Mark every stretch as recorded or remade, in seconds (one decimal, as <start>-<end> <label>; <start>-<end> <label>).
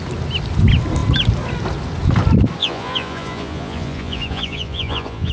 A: 0.0-2.6 recorded; 2.6-5.3 remade